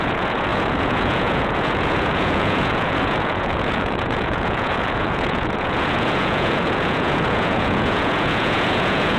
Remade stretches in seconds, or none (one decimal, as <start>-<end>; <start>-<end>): 0.0-9.2